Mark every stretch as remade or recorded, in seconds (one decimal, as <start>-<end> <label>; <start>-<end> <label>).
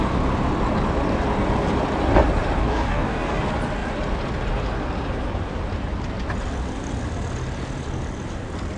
0.0-2.6 recorded; 2.6-3.4 remade; 3.4-8.8 recorded